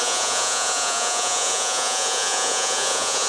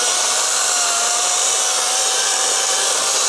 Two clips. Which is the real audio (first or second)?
second